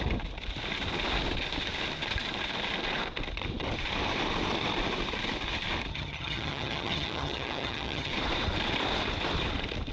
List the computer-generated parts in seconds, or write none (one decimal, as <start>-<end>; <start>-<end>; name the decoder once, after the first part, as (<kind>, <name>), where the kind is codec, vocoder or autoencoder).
5.9-8.1 (vocoder, HiFi-GAN)